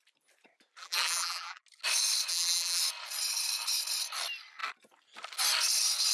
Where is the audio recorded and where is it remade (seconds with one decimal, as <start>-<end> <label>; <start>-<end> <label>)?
0.0-0.8 recorded; 0.8-1.6 remade; 1.6-2.3 recorded; 2.3-2.8 remade; 2.8-6.1 recorded